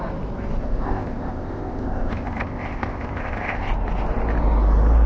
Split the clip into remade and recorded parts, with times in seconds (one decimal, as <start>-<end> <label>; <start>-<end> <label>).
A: 0.0-0.6 recorded; 0.6-3.7 remade; 3.7-5.1 recorded